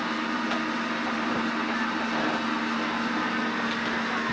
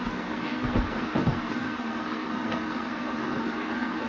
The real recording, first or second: first